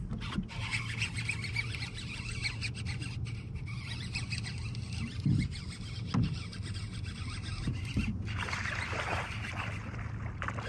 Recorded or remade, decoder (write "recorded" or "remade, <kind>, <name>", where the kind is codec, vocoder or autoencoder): recorded